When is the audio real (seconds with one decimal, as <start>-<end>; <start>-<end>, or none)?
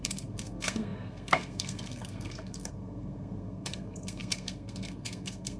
none